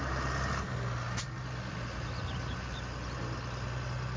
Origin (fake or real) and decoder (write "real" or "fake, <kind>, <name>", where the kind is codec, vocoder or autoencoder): real